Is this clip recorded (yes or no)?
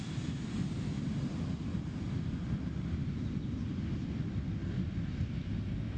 yes